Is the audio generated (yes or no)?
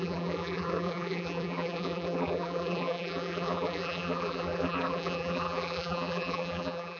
yes